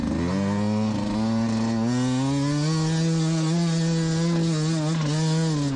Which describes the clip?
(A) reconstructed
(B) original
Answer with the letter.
B